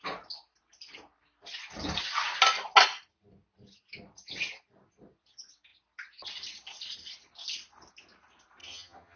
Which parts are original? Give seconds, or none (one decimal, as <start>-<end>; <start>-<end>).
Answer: 0.0-8.6